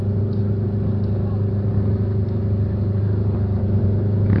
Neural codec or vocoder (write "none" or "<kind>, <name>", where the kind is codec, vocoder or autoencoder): none